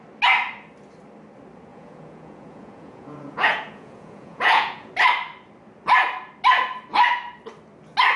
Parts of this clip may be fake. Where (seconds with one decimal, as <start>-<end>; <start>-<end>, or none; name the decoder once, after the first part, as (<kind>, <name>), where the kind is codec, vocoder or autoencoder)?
1.7-4.9 (vocoder, Vocos)